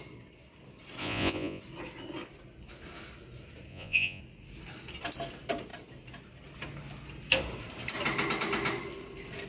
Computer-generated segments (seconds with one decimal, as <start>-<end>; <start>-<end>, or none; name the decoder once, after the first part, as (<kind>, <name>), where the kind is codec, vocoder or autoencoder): 1.0-1.6 (vocoder, Vocos); 3.7-4.2